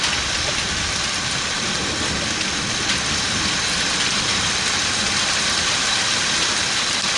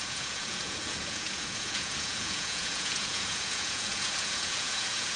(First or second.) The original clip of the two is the first